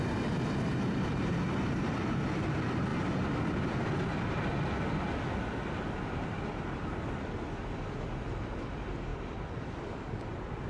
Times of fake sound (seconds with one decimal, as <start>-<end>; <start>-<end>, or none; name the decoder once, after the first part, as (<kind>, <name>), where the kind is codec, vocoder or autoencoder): none